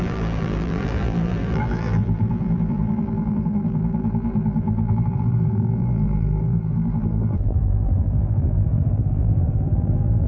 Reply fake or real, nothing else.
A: fake